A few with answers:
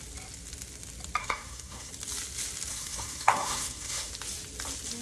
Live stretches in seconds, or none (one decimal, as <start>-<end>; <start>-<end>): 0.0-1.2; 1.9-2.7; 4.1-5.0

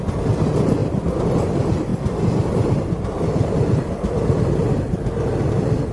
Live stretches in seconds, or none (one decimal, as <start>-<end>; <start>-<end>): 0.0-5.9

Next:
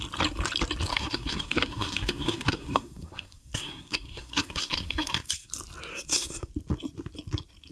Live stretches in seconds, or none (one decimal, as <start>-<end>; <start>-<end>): 0.0-0.9; 5.5-5.9; 6.5-7.7

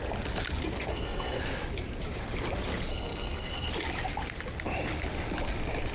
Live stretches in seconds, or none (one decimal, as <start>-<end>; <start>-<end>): 0.0-0.9; 1.4-2.9; 3.7-5.9